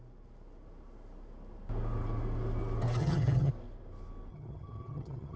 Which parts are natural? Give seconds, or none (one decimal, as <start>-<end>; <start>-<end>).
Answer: 0.0-3.0; 3.5-4.3